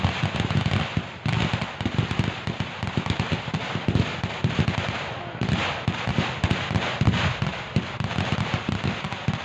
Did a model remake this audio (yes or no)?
no